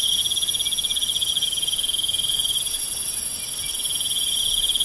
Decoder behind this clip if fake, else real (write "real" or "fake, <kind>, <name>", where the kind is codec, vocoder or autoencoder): real